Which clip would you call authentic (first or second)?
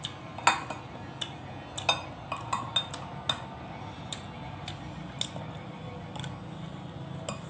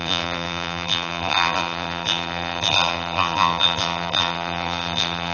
first